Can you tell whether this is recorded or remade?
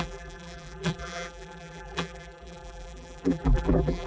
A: remade